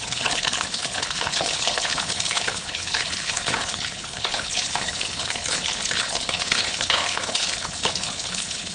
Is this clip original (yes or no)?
no